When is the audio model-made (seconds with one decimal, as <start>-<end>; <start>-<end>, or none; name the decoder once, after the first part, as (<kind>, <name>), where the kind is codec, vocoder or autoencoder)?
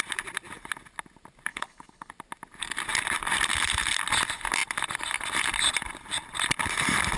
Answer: 1.5-2.1 (codec, HILCodec)